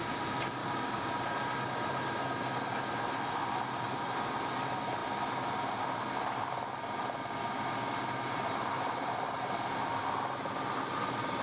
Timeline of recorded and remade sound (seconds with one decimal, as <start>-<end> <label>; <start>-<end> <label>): 0.0-0.6 recorded; 0.6-1.1 remade; 1.1-11.4 recorded